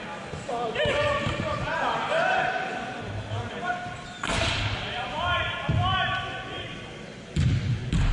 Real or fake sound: real